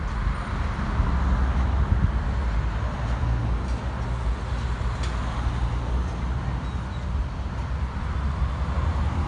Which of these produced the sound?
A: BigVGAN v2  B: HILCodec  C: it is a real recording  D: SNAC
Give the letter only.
C